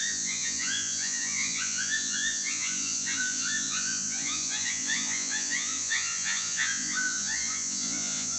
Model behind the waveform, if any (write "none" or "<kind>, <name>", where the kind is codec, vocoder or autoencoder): vocoder, Vocos